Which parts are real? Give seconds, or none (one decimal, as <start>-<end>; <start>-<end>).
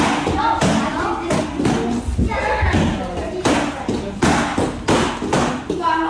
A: 0.0-6.1